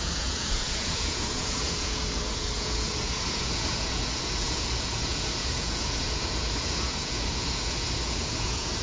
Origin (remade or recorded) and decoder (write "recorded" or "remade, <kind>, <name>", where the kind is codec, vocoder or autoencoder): remade, vocoder, Vocos